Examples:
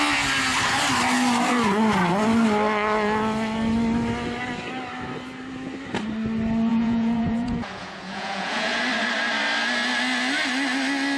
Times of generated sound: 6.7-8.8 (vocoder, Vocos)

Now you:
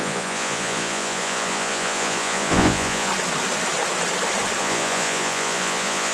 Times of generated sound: 0.0-3.1 (vocoder, Vocos); 4.6-6.1

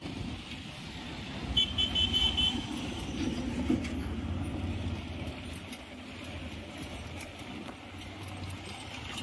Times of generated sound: none

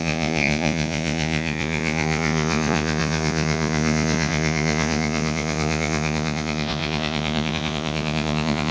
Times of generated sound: 0.0-8.7 (vocoder, Vocos)

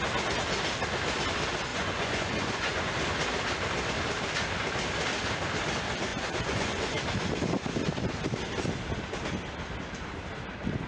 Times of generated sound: 1.7-2.9 (vocoder, Vocos); 6.1-7.0

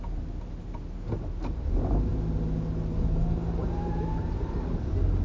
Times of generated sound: none

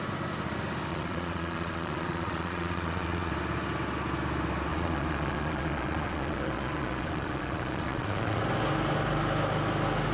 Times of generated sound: 0.9-3.3 (vocoder, Vocos); 4.7-8.4